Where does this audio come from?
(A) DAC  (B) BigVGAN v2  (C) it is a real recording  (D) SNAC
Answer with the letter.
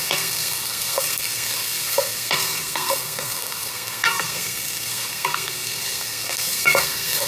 D